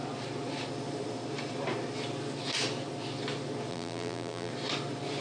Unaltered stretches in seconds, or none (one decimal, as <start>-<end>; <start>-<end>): 0.0-3.7; 4.5-5.2